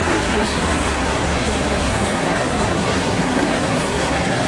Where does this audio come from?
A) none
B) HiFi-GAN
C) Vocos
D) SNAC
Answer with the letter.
D